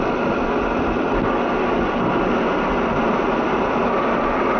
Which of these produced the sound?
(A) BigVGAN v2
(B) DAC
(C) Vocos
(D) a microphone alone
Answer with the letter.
D